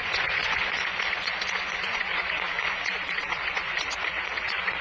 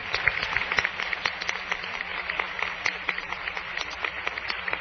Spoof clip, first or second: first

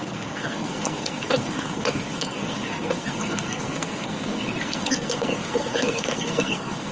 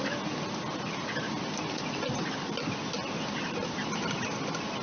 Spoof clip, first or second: first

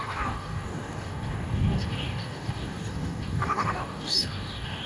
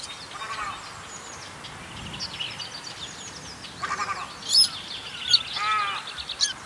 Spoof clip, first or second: first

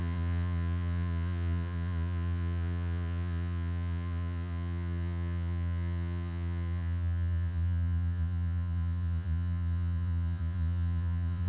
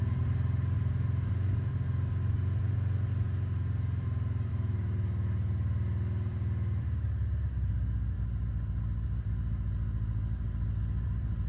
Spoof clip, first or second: first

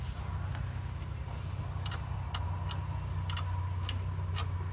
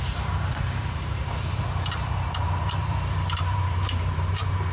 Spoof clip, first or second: second